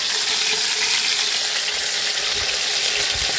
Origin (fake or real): real